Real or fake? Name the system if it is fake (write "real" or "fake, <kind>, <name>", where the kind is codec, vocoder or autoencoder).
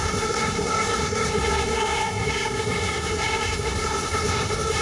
fake, codec, SNAC